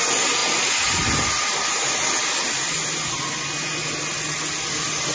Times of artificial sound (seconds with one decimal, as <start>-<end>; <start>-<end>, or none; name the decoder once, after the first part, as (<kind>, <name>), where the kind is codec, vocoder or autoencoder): none